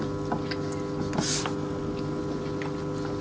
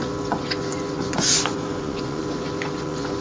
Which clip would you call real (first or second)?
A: first